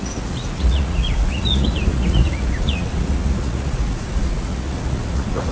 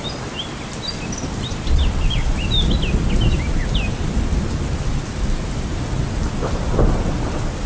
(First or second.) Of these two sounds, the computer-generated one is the first